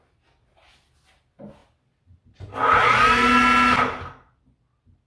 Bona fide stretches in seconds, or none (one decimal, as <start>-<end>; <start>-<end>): 0.0-5.1